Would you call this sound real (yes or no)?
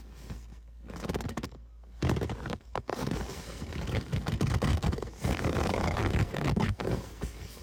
no